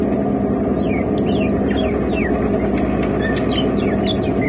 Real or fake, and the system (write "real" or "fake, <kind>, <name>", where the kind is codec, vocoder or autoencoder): real